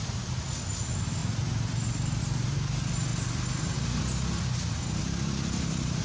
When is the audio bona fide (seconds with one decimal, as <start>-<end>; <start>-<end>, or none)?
0.0-5.0